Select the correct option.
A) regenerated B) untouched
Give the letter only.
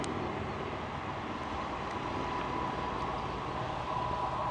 B